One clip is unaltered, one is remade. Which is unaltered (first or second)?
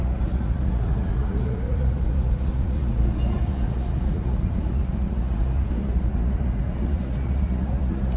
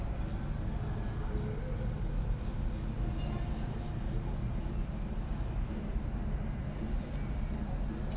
second